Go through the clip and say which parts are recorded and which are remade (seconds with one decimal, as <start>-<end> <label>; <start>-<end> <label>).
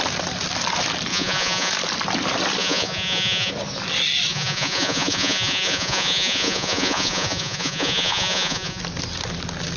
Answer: 0.0-1.1 recorded; 1.1-1.7 remade; 1.7-2.6 recorded; 2.6-3.5 remade; 3.5-4.3 recorded; 4.3-8.8 remade; 8.8-9.8 recorded